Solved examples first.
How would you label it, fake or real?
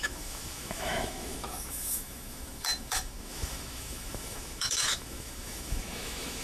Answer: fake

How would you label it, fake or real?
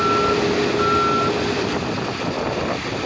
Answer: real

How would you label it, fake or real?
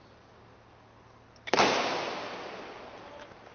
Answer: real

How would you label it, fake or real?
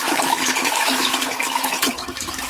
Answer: fake